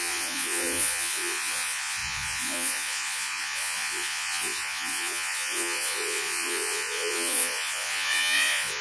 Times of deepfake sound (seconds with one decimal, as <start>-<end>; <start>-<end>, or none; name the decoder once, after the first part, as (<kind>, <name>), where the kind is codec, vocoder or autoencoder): 0.0-8.8 (vocoder, Vocos)